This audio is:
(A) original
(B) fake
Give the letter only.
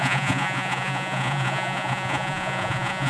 B